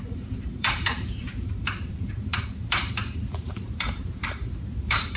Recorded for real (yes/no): no